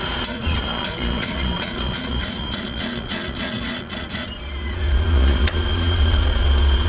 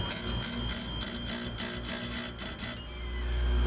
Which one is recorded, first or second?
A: second